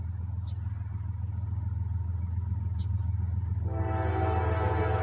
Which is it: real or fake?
real